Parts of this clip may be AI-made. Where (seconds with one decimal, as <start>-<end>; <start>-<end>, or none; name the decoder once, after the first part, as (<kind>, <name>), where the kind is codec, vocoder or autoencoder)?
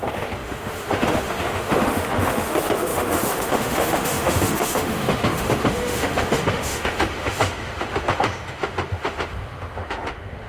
0.0-10.5 (autoencoder, DAC-VAE)